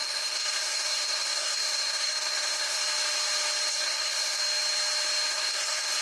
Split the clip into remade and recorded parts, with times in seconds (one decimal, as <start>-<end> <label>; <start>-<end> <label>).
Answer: 0.0-2.8 remade; 2.8-3.7 recorded; 3.7-4.4 remade; 4.4-5.3 recorded; 5.3-6.0 remade